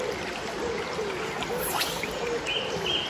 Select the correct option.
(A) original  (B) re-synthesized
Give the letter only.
A